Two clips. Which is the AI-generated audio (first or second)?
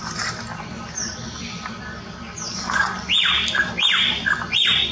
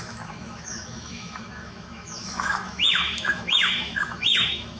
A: second